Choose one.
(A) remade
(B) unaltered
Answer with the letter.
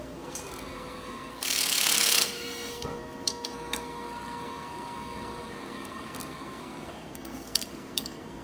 A